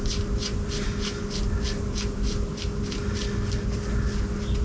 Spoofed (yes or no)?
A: no